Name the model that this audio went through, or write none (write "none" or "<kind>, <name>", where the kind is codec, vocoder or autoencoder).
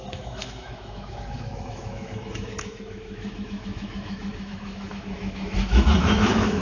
autoencoder, DAC-VAE